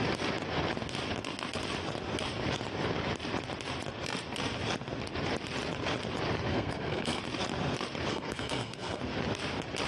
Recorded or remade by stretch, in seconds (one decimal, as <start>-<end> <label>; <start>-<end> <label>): 0.0-6.5 recorded; 6.5-7.2 remade; 7.2-8.1 recorded; 8.1-9.0 remade; 9.0-9.9 recorded